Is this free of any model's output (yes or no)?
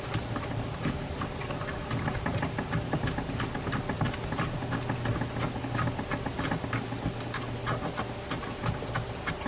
yes